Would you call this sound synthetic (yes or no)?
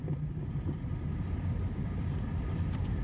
no